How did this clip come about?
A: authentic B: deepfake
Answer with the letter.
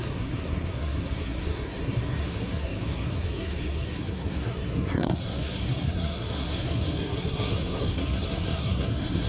B